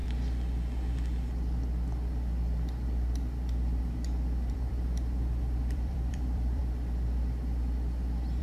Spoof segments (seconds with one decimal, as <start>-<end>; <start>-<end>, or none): 4.5-6.6